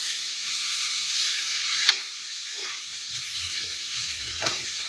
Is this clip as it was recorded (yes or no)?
no